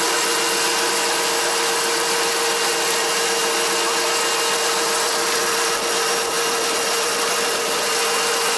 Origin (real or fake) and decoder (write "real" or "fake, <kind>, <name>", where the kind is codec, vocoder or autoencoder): real